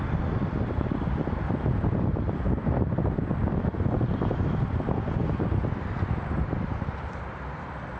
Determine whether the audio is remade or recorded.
remade